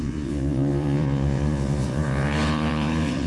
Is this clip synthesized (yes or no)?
yes